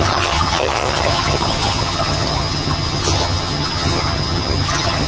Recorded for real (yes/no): no